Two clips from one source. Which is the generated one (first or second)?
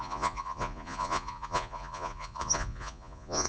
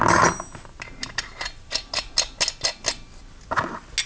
first